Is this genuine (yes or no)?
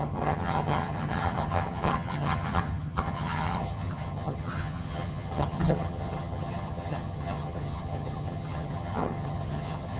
no